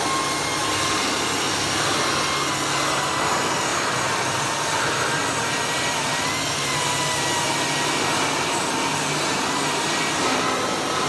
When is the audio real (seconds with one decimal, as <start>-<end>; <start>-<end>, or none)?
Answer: 0.0-0.6; 1.9-11.1